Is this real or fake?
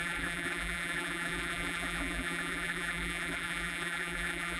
fake